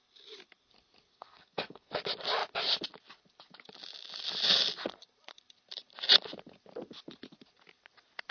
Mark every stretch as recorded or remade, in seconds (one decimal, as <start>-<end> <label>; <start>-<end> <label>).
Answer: 0.0-1.1 recorded; 1.1-2.0 remade; 2.0-8.3 recorded